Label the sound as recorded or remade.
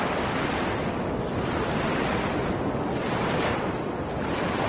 recorded